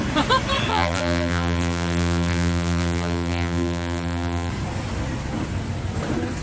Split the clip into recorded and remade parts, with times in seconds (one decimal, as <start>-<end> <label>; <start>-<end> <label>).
0.0-0.7 recorded; 0.7-4.5 remade; 4.5-6.4 recorded